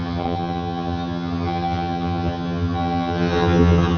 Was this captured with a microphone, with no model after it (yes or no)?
no